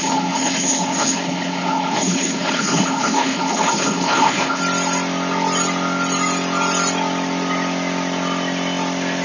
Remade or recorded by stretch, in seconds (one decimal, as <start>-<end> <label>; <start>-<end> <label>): 0.0-4.6 remade; 4.6-9.2 recorded